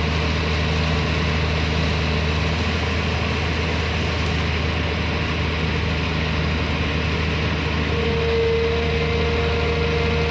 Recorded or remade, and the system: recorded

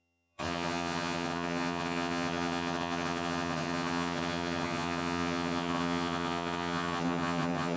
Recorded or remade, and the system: remade, vocoder, HiFi-GAN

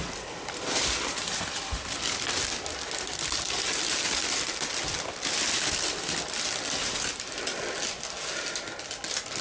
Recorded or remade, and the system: recorded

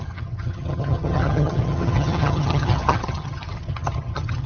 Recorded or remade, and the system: remade, vocoder, HiFi-GAN